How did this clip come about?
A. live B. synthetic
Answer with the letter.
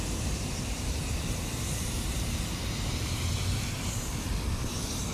B